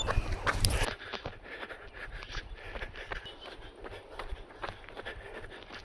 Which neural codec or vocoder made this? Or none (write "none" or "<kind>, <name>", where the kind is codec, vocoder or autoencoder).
none